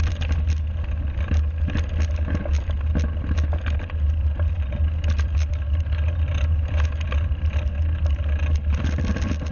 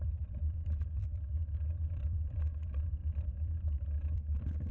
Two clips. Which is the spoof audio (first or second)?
second